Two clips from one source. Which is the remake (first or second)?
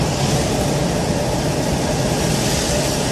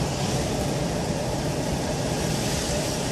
second